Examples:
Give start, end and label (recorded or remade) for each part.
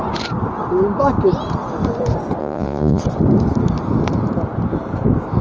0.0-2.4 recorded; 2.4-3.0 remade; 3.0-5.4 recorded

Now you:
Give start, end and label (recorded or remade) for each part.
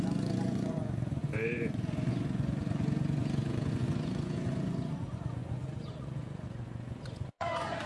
0.0-7.9 remade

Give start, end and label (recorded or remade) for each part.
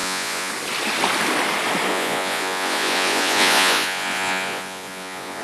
0.0-0.5 remade; 0.5-1.9 recorded; 1.9-5.4 remade